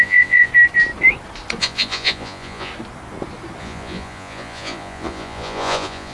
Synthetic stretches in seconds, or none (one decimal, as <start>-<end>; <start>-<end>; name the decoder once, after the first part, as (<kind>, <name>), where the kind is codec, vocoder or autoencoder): 0.0-0.5 (vocoder, Vocos); 1.6-2.7; 3.6-6.1